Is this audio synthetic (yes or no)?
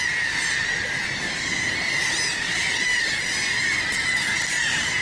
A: no